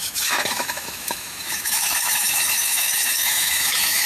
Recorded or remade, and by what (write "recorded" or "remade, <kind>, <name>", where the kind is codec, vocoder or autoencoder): remade, autoencoder, DAC-VAE